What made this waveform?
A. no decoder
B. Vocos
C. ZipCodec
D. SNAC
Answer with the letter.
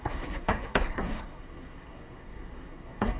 D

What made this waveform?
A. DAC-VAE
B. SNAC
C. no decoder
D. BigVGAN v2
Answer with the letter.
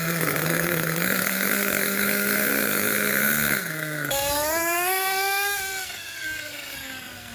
B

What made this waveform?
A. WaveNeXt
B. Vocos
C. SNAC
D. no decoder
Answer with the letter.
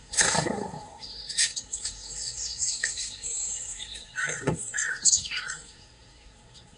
C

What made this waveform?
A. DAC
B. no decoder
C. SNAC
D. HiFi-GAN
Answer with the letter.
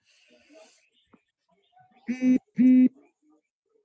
B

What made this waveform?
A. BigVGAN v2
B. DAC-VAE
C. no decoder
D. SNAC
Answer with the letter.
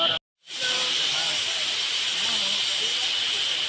C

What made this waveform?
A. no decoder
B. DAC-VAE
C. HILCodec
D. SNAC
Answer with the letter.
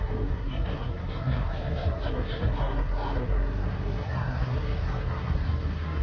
D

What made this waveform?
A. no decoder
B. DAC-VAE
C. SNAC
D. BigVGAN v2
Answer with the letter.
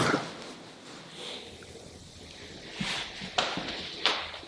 A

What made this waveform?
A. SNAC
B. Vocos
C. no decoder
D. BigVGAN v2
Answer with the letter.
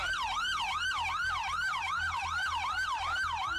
C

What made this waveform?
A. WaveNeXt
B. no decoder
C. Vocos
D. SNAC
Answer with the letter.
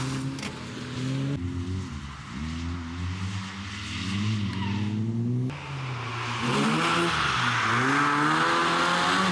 B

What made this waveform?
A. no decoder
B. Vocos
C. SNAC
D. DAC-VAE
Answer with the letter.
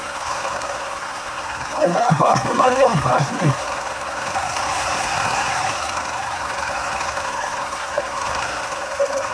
C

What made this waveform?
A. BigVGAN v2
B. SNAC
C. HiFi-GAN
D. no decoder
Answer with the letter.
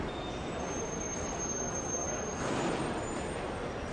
D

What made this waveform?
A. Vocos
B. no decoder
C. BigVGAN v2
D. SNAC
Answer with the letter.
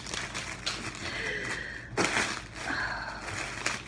B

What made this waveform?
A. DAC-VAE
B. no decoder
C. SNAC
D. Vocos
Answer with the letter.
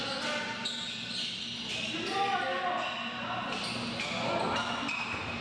B